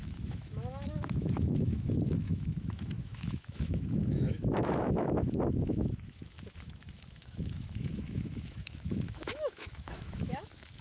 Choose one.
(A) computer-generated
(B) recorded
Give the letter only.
A